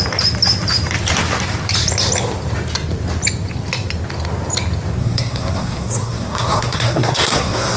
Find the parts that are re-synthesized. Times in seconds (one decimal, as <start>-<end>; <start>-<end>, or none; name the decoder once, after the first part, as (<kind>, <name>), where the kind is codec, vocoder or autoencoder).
5.0-7.8 (codec, SNAC)